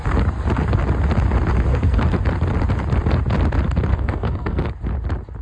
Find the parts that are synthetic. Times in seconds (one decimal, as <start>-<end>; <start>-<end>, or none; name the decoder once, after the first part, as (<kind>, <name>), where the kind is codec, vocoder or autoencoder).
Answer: 1.7-2.2 (codec, SNAC); 3.9-4.7